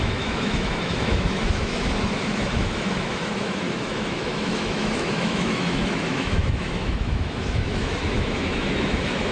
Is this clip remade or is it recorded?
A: remade